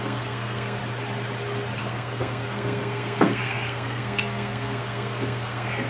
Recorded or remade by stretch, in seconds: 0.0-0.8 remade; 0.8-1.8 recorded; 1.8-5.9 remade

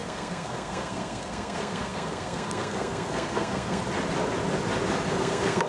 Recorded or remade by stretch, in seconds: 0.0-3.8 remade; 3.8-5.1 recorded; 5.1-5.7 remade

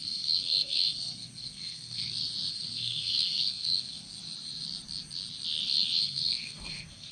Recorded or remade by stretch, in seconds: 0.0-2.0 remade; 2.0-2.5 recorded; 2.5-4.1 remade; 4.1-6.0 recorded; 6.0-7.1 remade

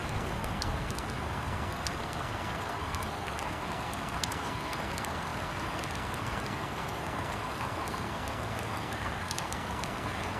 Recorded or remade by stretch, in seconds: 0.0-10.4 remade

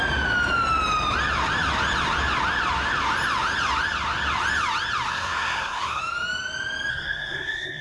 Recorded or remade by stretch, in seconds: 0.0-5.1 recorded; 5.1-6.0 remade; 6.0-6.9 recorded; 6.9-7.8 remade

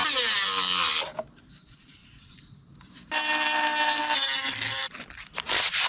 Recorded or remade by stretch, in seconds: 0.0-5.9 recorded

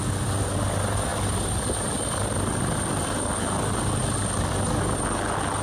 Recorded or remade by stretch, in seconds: 0.0-5.6 recorded